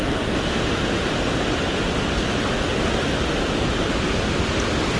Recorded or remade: recorded